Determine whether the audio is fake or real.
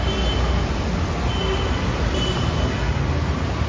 real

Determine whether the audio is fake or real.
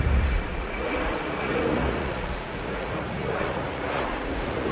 fake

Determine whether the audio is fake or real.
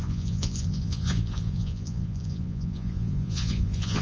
fake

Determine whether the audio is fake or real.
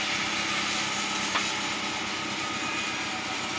real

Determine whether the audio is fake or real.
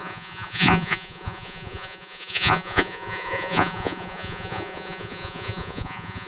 fake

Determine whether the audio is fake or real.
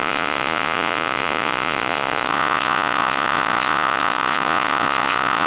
fake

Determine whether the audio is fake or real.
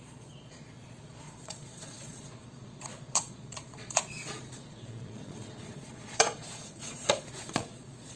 fake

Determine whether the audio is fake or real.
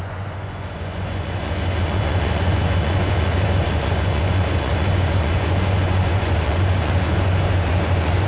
fake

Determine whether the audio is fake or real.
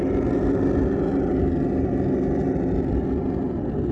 real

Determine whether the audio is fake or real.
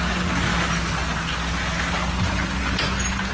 real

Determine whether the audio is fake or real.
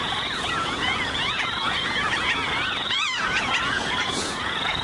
fake